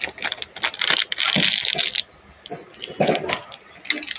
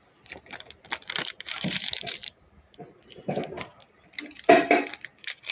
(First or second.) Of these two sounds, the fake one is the second